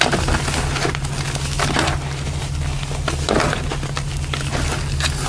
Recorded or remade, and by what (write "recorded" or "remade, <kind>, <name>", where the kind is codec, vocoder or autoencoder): recorded